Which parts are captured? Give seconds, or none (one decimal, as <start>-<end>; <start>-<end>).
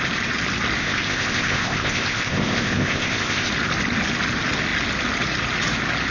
0.0-0.8; 3.5-6.1